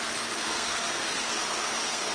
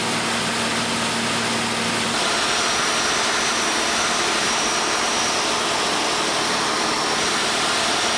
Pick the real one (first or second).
second